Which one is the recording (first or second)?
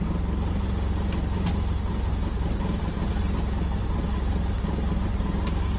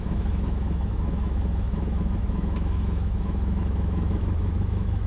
first